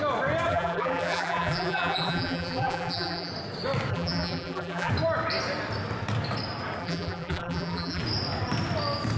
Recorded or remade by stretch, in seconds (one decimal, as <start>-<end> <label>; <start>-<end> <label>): 0.0-0.5 recorded; 0.5-3.3 remade; 3.3-3.9 recorded; 3.9-4.9 remade; 4.9-6.8 recorded; 6.8-8.0 remade; 8.0-9.2 recorded